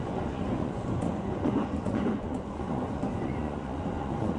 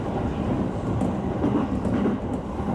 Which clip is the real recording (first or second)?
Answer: second